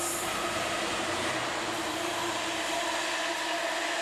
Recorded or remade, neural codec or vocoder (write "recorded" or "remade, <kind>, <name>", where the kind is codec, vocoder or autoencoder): remade, vocoder, BigVGAN v2